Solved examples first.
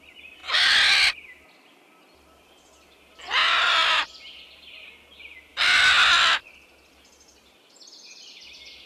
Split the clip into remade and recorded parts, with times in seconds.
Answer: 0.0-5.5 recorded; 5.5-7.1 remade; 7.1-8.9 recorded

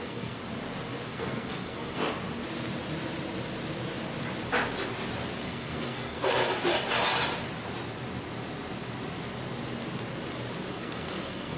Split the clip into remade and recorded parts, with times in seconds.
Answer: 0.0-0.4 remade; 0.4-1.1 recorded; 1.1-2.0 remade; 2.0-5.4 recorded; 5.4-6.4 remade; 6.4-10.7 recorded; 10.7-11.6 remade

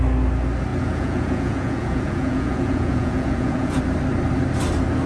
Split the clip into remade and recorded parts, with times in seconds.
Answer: 0.0-0.7 recorded; 0.7-3.8 remade; 3.8-5.1 recorded

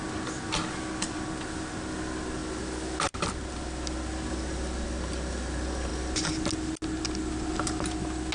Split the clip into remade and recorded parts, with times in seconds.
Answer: 0.0-8.3 recorded

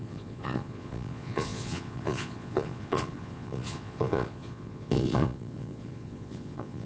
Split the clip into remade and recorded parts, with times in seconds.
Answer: 0.0-6.9 remade

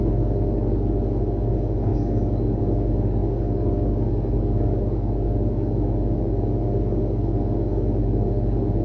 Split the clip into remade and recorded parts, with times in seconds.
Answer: 0.0-8.8 remade